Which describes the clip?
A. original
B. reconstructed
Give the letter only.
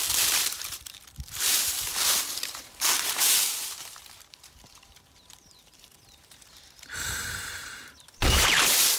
B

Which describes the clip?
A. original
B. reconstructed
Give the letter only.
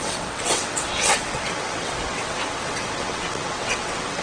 B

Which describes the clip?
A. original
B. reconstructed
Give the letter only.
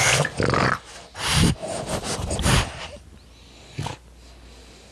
A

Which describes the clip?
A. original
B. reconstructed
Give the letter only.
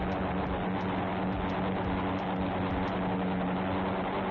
A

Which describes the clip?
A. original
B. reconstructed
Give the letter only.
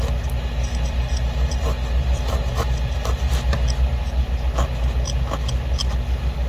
A